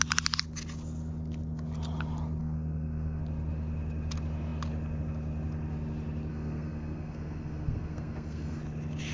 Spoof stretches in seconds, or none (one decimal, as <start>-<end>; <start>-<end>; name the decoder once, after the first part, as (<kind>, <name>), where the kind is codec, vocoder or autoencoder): 2.4-3.2 (codec, SNAC); 6.3-8.6

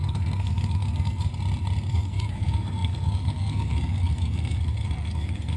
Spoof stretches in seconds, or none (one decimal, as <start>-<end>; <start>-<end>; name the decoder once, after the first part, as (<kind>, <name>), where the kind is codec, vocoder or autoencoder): 0.0-1.3 (codec, SNAC); 1.9-5.6

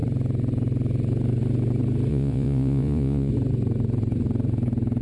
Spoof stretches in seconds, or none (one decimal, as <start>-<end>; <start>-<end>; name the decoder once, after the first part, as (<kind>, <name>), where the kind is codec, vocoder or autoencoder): 2.1-3.3 (vocoder, Vocos)

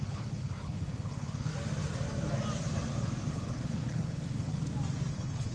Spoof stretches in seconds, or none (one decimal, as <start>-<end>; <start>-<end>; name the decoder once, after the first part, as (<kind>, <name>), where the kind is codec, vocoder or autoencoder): 0.0-1.5 (codec, HILCodec); 3.3-4.5; 5.1-5.5